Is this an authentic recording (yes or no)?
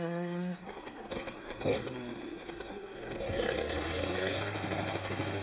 no